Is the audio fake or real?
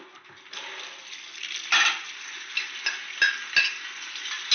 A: real